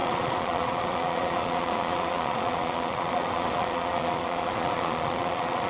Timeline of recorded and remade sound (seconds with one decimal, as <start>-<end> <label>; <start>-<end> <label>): 0.0-5.7 remade